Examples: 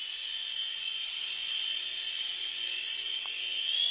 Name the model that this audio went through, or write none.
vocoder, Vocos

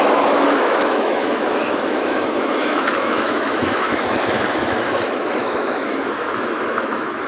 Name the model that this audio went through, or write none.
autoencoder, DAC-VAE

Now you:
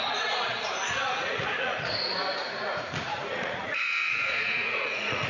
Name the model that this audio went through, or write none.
vocoder, Vocos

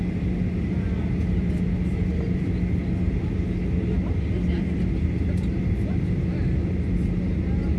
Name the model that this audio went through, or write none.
none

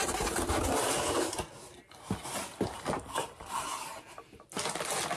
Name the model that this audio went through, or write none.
none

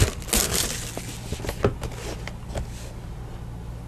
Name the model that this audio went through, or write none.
none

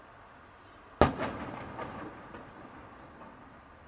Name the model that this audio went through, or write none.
none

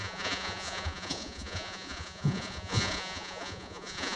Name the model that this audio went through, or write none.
vocoder, Vocos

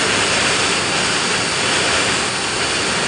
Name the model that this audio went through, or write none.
none